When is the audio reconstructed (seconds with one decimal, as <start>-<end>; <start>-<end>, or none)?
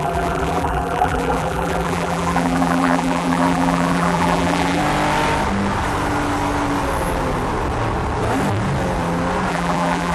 0.0-4.8; 9.5-10.1